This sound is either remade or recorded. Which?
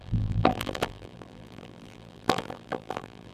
remade